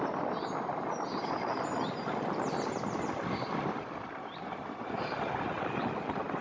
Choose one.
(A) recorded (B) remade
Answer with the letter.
A